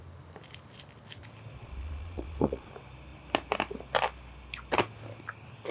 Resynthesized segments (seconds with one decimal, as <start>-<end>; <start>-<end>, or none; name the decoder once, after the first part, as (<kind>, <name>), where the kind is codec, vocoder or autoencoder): 1.6-2.7 (vocoder, Vocos)